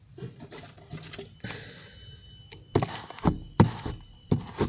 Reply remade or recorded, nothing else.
recorded